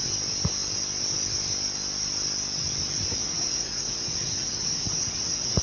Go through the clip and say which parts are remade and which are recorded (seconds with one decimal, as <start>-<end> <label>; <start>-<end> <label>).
0.0-3.2 recorded; 3.2-5.6 remade